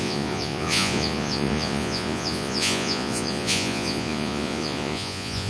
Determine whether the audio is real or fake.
fake